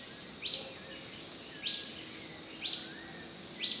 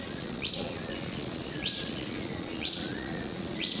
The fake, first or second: second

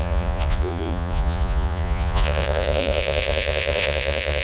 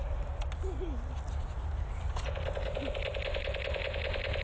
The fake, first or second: first